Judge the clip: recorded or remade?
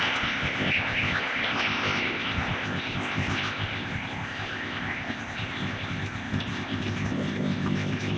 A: remade